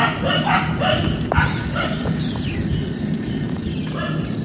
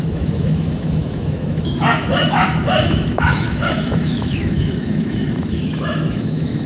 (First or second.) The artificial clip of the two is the second